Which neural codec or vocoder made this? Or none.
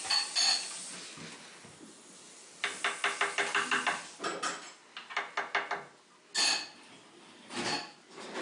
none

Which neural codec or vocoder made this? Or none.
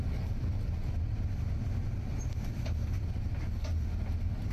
none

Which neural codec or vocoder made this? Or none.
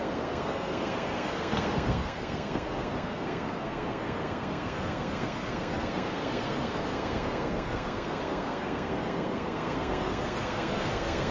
codec, SNAC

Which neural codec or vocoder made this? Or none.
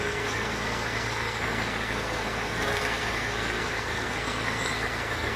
codec, SNAC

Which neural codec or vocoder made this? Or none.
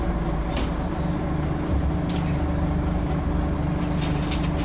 none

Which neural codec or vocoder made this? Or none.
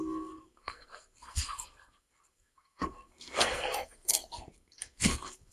codec, SNAC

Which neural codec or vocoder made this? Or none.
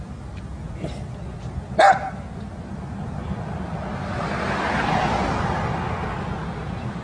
none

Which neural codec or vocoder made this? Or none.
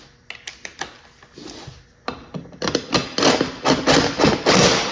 none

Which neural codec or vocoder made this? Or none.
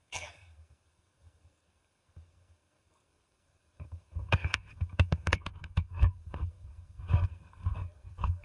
codec, SNAC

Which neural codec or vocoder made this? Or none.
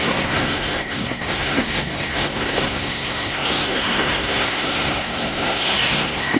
codec, SNAC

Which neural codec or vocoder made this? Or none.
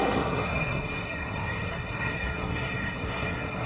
codec, SNAC